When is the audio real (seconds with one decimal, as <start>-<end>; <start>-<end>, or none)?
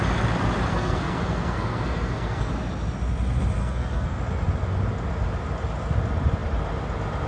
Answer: 0.0-0.7; 2.5-3.6; 4.2-7.3